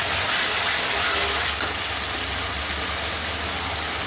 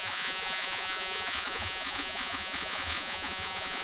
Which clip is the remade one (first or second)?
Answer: second